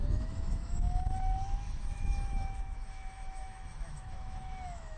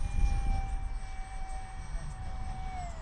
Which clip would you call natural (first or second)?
second